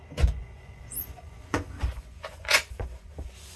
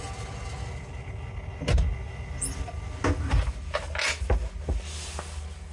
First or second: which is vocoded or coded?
first